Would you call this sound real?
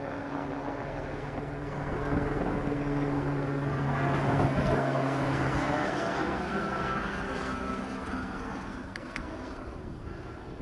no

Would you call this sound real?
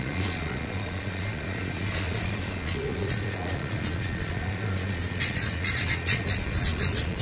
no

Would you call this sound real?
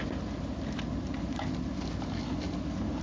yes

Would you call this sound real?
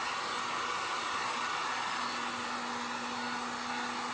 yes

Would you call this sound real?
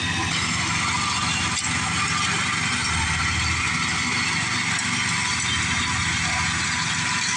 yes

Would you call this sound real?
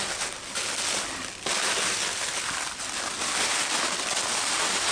yes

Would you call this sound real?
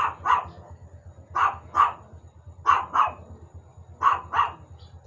yes